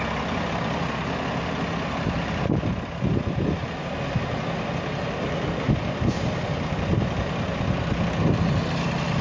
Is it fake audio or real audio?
real